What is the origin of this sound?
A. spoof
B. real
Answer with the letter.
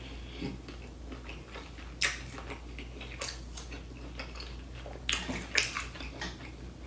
B